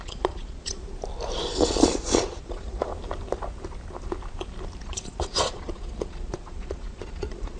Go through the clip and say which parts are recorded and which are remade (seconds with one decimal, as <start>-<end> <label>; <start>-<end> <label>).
0.0-0.8 remade; 0.8-1.7 recorded; 1.7-2.9 remade; 2.9-4.8 recorded; 4.8-7.6 remade